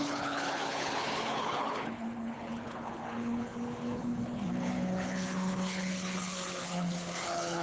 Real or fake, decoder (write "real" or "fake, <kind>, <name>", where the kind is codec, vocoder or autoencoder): fake, codec, HILCodec